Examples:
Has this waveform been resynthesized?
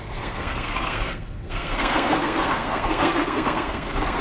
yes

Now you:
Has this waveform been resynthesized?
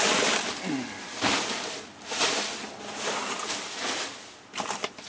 no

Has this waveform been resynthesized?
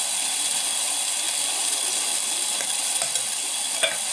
no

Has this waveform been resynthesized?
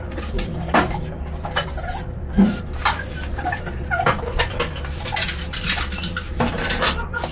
yes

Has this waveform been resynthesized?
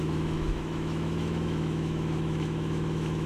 yes